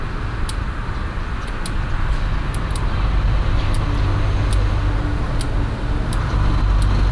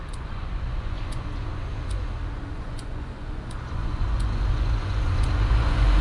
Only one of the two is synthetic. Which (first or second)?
second